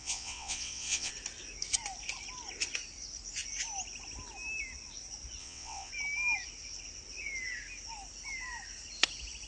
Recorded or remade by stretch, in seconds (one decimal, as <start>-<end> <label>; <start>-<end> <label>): 0.0-1.1 remade; 1.1-5.4 recorded; 5.4-5.9 remade; 5.9-9.5 recorded

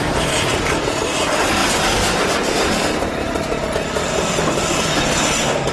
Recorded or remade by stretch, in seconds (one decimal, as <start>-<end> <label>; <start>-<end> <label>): 0.0-5.7 recorded

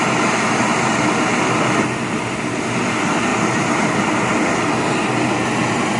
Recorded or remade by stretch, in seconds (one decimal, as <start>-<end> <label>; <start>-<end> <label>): 0.0-3.3 recorded; 3.3-4.0 remade; 4.0-6.0 recorded

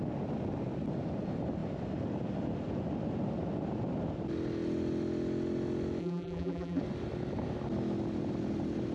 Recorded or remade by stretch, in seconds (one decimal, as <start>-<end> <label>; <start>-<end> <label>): 0.0-6.0 recorded; 6.0-6.8 remade; 6.8-8.9 recorded

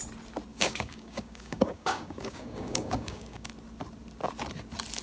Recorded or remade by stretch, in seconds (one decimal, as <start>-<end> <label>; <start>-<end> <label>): 0.0-0.5 recorded; 0.5-3.5 remade; 3.5-5.0 recorded